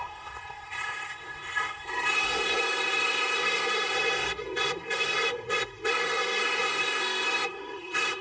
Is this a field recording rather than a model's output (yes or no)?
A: no